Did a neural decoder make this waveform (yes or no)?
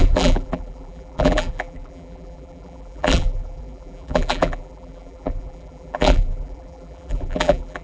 yes